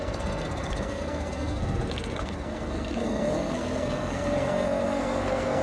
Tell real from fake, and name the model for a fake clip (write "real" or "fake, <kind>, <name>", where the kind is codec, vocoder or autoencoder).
fake, codec, SNAC